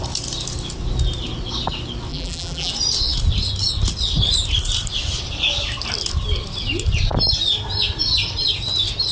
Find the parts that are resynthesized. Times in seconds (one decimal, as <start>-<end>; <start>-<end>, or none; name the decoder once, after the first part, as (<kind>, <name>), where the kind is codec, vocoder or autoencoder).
2.1-2.7 (vocoder, BigVGAN v2)